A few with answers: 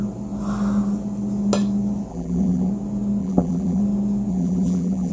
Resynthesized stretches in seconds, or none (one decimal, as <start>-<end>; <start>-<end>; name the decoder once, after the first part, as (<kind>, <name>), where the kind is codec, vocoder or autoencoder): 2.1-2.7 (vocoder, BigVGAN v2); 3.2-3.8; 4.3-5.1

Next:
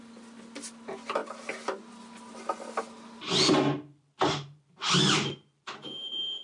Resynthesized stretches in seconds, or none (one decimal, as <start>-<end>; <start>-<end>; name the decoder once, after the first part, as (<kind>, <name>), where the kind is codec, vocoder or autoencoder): none

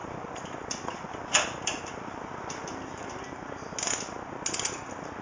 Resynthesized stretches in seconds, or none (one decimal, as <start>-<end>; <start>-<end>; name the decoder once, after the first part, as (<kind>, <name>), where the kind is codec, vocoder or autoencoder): 0.0-3.1 (vocoder, BigVGAN v2)

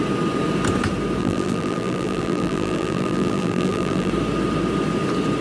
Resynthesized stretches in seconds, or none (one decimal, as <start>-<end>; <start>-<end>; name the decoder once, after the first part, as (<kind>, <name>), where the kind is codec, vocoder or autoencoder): 1.2-4.1 (vocoder, BigVGAN v2)